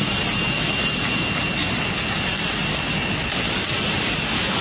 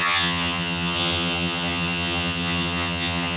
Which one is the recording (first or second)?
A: first